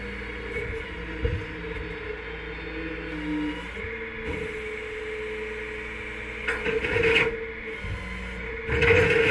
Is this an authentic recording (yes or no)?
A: yes